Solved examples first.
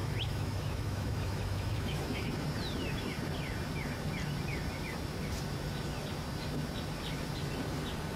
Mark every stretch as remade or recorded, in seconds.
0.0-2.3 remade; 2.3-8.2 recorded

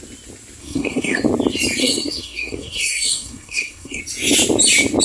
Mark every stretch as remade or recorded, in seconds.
0.0-0.6 recorded; 0.6-1.2 remade; 1.2-1.8 recorded; 1.8-4.0 remade; 4.0-5.0 recorded

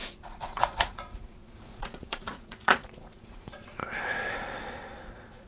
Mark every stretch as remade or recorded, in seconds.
0.0-3.8 remade; 3.8-5.1 recorded; 5.1-5.5 remade

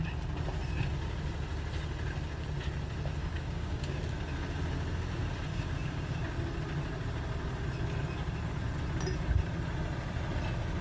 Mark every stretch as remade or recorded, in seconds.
0.0-3.2 recorded; 3.2-4.0 remade; 4.0-5.5 recorded; 5.5-6.2 remade; 6.2-10.8 recorded

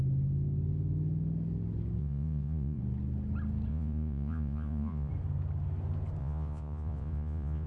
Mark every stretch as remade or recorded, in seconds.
0.0-2.0 recorded; 2.0-2.8 remade; 2.8-3.7 recorded; 3.7-5.1 remade; 5.1-6.2 recorded; 6.2-7.7 remade

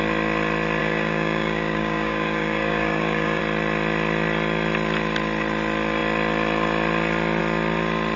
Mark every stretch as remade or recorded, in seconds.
0.0-0.8 recorded; 0.8-3.4 remade; 3.4-8.2 recorded